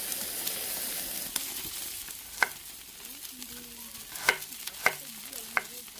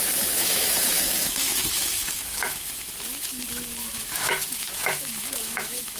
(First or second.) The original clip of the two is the first